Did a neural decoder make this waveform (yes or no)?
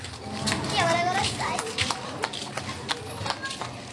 no